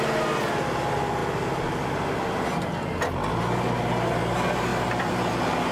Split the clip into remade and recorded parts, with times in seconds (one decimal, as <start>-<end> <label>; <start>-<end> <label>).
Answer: 0.0-4.7 recorded; 4.7-5.3 remade; 5.3-5.7 recorded